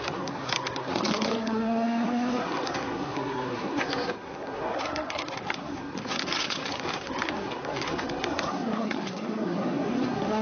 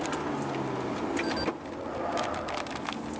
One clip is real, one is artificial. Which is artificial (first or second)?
first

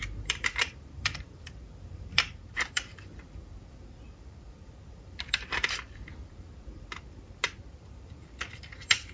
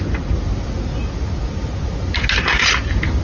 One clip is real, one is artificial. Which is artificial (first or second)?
first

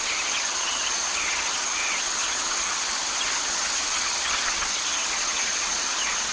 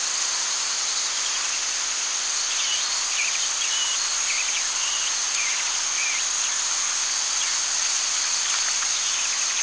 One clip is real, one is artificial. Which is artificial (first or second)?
first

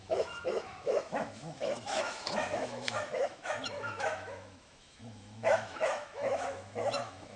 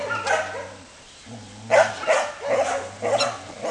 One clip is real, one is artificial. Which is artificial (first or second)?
first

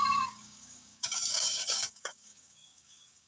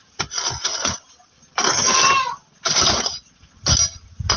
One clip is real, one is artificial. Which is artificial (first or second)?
first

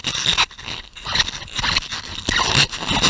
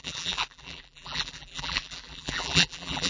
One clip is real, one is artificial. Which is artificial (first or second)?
second